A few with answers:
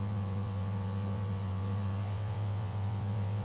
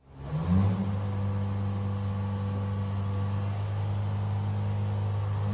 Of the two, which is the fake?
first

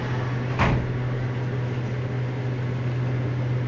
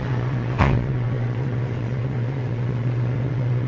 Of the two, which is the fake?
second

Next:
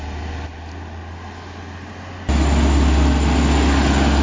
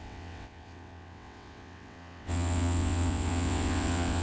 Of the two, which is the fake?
second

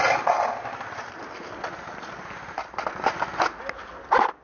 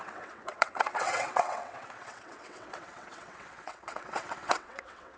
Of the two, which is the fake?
second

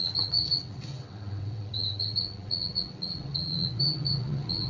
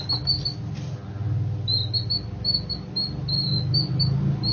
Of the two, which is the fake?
first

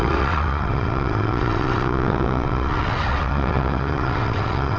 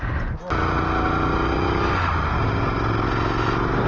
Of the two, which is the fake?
first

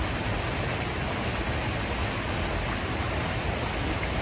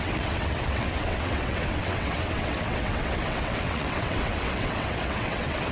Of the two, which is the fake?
second